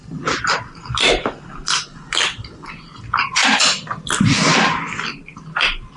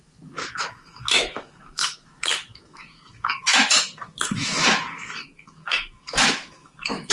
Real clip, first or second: first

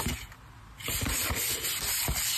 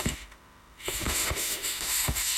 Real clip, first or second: first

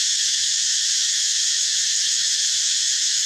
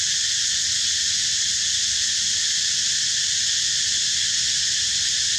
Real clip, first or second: second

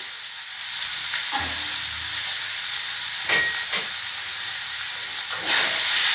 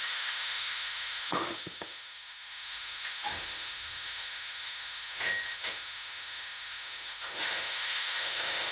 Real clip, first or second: first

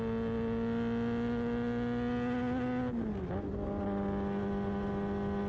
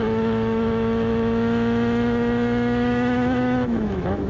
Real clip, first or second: first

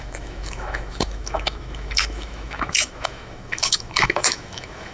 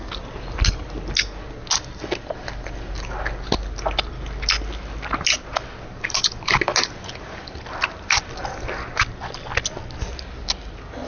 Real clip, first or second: second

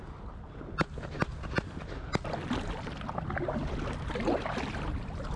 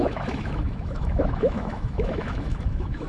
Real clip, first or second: first